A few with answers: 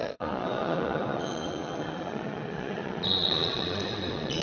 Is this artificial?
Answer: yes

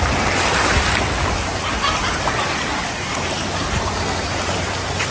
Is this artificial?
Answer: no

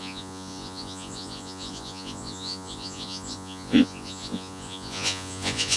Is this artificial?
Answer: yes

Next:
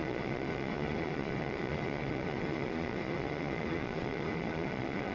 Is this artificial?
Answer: yes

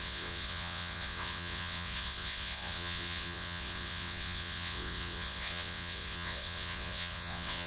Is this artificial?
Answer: yes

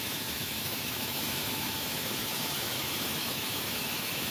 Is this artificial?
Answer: yes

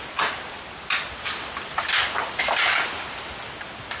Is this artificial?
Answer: no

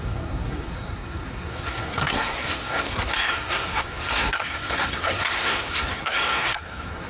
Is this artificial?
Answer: yes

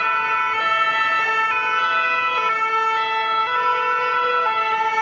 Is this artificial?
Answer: no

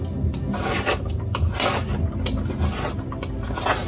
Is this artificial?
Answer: no